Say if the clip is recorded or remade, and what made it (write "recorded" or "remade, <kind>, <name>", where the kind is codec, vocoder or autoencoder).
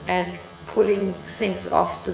remade, vocoder, HiFi-GAN